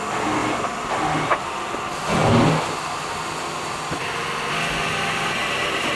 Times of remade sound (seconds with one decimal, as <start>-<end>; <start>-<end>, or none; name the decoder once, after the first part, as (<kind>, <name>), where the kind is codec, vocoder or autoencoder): 0.4-1.8 (vocoder, BigVGAN v2)